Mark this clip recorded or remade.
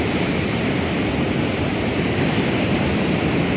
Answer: recorded